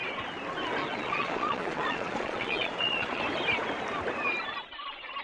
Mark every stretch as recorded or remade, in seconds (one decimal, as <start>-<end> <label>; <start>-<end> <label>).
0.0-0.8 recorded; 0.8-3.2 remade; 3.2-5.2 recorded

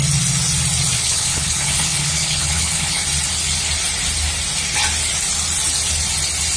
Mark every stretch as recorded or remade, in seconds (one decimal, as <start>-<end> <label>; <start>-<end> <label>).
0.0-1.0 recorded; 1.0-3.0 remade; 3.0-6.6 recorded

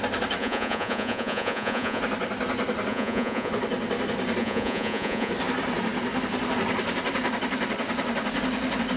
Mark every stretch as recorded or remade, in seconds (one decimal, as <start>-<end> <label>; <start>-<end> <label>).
0.0-0.4 recorded; 0.4-2.0 remade; 2.0-2.9 recorded; 2.9-3.5 remade; 3.5-4.4 recorded; 4.4-5.3 remade; 5.3-9.0 recorded

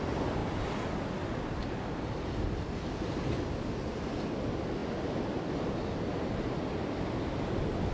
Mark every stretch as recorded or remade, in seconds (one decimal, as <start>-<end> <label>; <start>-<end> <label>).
0.0-7.9 recorded